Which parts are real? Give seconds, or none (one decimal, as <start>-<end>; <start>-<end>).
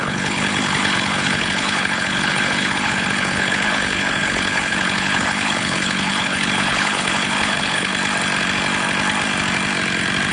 7.9-10.3